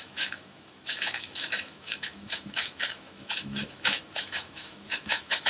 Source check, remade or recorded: remade